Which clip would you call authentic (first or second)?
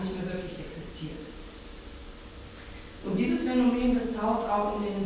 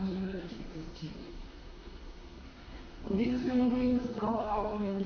first